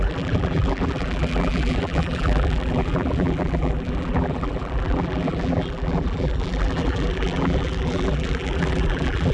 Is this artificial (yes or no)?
yes